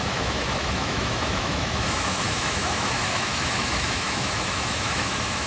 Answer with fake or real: fake